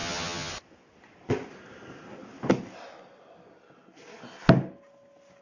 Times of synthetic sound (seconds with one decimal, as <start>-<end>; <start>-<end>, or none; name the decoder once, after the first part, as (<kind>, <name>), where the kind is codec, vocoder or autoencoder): 0.0-0.5 (vocoder, HiFi-GAN)